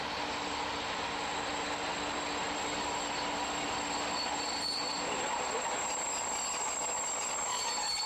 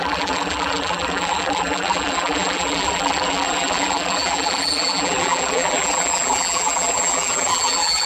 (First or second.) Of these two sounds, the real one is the first